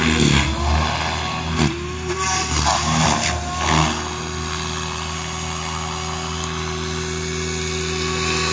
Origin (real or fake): real